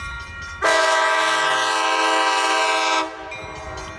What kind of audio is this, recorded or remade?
recorded